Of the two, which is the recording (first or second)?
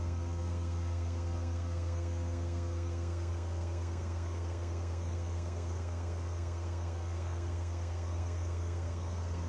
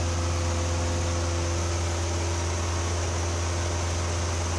second